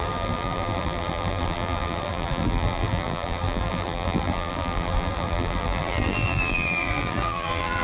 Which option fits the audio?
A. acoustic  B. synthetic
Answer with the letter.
B